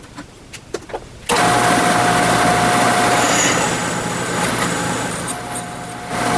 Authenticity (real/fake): real